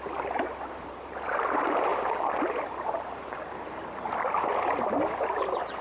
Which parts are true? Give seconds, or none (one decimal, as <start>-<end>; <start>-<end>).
0.0-0.7; 1.9-5.8